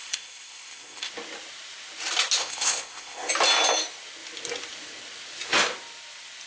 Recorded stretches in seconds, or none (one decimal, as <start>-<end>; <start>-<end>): 1.1-2.4; 3.3-6.5